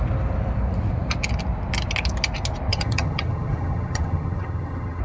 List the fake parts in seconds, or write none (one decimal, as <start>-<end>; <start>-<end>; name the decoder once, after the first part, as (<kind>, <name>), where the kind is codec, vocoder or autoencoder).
2.7-5.0 (vocoder, HiFi-GAN)